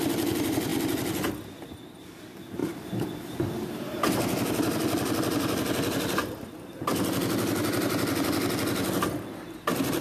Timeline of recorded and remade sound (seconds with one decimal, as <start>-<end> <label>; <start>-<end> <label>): 0.0-10.0 recorded